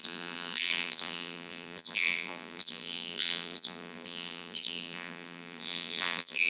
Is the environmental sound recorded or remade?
remade